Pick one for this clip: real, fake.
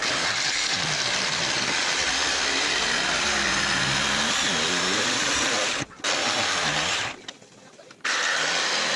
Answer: fake